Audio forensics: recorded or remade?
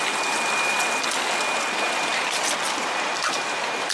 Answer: remade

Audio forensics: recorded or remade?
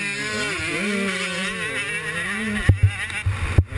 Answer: recorded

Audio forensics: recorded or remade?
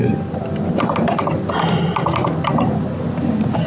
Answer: recorded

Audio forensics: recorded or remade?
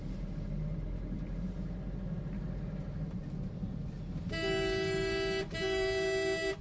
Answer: recorded